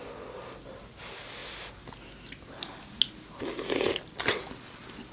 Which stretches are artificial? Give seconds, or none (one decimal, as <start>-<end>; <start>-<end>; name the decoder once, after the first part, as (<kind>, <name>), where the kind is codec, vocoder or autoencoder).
none